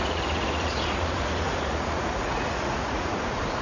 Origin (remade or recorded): remade